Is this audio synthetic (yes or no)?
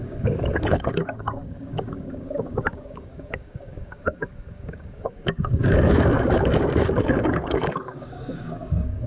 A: yes